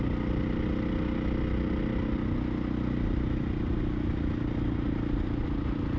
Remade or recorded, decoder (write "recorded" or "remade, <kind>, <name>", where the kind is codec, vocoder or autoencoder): recorded